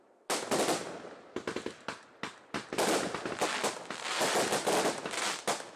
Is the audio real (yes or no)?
yes